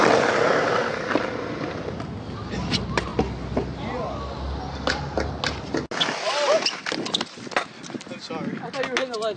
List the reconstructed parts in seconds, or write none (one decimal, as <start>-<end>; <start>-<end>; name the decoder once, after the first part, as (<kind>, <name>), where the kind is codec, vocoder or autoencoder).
none